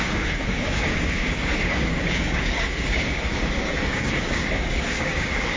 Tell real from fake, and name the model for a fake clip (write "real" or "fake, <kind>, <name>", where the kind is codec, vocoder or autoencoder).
fake, codec, DAC